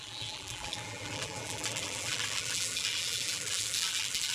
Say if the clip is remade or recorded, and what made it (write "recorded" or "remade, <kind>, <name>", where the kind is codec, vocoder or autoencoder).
remade, vocoder, BigVGAN v2